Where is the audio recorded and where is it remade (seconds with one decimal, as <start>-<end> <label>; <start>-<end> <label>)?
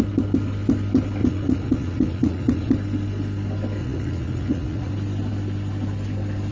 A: 0.0-1.2 recorded; 1.2-2.7 remade; 2.7-3.8 recorded; 3.8-4.9 remade; 4.9-6.5 recorded